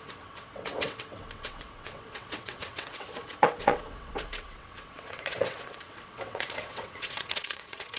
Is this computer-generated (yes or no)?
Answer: yes